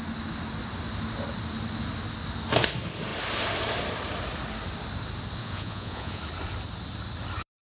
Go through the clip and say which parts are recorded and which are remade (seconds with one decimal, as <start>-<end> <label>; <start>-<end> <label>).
0.0-5.4 recorded; 5.4-6.2 remade; 6.2-7.6 recorded